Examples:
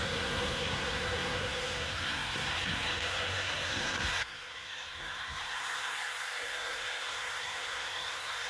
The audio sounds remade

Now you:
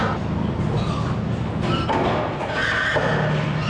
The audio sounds recorded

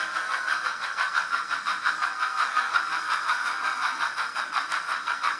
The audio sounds remade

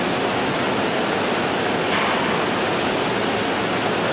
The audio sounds recorded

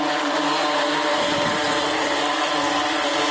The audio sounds recorded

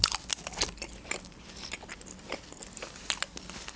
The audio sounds recorded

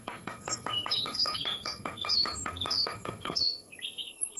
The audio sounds remade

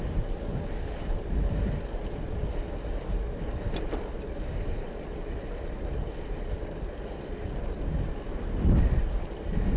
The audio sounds recorded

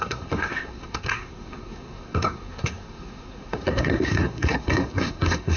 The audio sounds remade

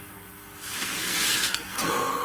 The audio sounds remade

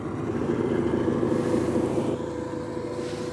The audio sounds recorded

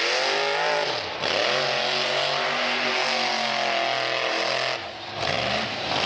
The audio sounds recorded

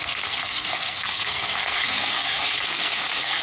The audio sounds remade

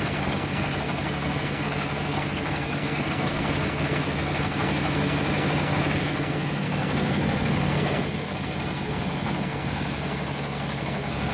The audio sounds remade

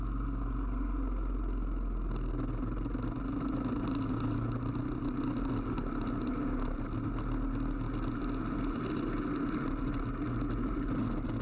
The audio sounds recorded